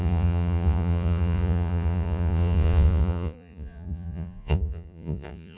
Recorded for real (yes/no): no